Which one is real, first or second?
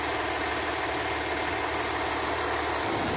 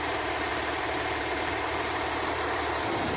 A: first